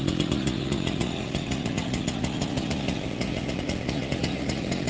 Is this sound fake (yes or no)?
yes